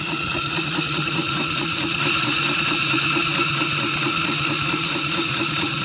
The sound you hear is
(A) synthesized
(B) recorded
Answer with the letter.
A